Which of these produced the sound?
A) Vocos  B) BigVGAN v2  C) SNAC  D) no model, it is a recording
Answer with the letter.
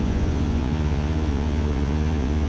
A